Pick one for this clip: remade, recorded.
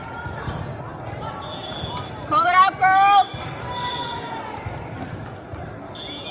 recorded